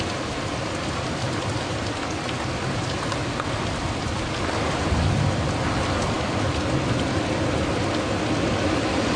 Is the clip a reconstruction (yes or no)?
no